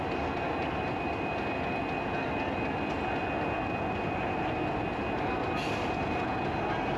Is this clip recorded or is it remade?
recorded